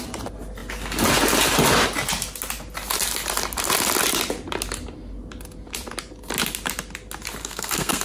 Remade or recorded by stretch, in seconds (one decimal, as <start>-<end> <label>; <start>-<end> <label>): 0.0-7.4 recorded; 7.4-8.0 remade